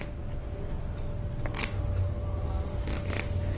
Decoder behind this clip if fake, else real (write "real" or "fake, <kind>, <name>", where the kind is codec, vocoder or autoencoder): real